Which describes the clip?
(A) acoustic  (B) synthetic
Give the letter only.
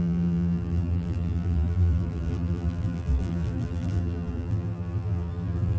B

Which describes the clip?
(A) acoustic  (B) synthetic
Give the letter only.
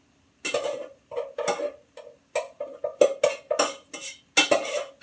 A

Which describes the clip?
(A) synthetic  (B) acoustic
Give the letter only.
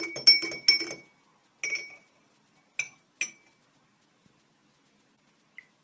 B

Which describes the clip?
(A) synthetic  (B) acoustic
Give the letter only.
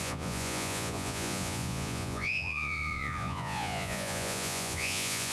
A